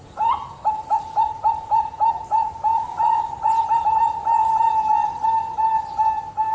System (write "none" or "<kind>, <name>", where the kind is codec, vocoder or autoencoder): none